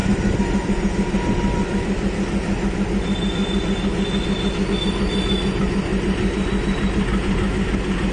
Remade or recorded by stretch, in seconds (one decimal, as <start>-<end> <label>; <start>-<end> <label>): 0.0-8.1 recorded